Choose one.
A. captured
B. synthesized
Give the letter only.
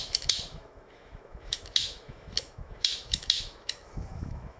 B